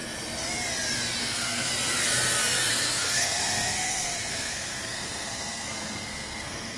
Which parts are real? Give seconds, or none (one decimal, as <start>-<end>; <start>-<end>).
0.0-1.2; 1.7-2.7